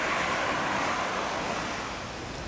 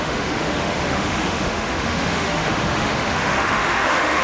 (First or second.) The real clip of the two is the first